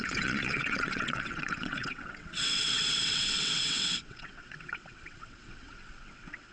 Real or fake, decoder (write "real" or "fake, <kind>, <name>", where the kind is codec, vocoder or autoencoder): fake, vocoder, WaveNeXt